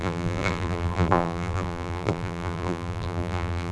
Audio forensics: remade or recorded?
remade